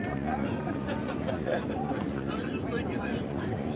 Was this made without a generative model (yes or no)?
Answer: no